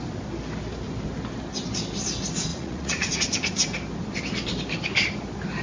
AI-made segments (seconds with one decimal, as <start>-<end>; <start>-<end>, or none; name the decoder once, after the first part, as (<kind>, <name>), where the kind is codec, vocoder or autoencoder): 2.5-3.2 (vocoder, Vocos)